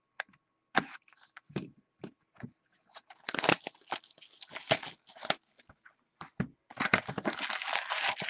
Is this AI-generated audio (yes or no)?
no